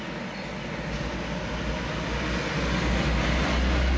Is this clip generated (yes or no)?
no